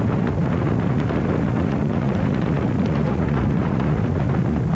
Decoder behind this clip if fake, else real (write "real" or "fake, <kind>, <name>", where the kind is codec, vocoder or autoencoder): fake, vocoder, Vocos